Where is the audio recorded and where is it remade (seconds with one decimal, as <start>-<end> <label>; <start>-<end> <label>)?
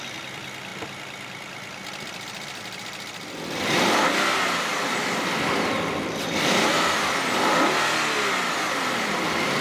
0.0-9.6 recorded